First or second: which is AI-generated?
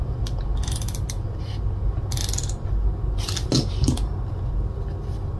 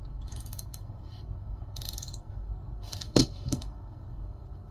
second